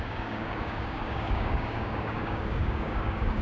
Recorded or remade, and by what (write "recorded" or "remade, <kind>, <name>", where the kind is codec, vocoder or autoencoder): remade, codec, DAC